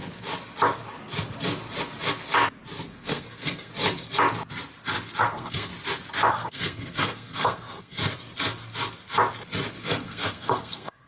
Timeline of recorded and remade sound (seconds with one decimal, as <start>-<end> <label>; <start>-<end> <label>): 0.0-2.9 recorded; 2.9-3.7 remade; 3.7-5.2 recorded; 5.2-5.7 remade; 5.7-6.3 recorded; 6.3-8.0 remade; 8.0-9.8 recorded; 9.8-11.1 remade